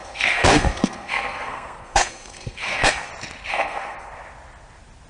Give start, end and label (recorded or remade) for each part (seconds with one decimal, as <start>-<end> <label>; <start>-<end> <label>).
0.0-3.1 remade; 3.1-3.5 recorded; 3.5-4.1 remade; 4.1-5.1 recorded